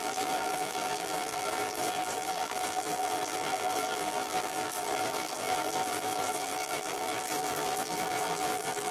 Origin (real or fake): fake